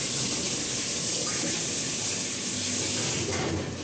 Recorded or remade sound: remade